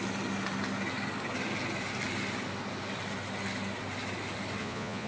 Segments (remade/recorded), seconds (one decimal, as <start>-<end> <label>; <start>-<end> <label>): 0.0-4.6 recorded; 4.6-5.1 remade